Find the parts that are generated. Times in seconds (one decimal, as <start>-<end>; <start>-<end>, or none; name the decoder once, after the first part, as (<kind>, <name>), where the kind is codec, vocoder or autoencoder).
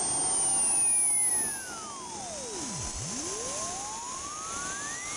none